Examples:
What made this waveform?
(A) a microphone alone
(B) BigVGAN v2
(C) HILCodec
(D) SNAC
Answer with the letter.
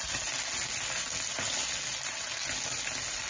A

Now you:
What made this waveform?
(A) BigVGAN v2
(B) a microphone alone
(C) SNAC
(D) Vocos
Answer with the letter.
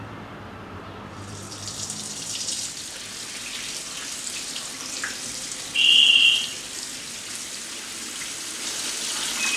A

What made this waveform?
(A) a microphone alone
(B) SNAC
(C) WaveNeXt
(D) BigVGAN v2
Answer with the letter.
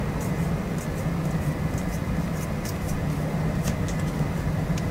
A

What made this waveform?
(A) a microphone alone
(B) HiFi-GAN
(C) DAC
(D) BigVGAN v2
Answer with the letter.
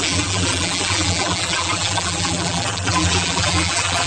D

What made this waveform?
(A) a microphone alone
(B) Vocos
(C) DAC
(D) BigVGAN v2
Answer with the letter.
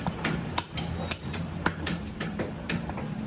D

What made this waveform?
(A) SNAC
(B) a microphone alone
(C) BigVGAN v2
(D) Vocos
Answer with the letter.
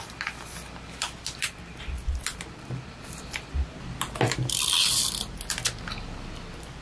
C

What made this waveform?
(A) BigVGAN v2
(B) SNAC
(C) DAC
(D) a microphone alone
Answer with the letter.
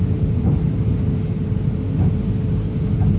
D